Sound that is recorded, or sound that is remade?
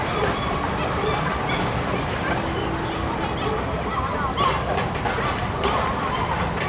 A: recorded